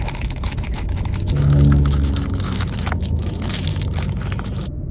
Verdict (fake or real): fake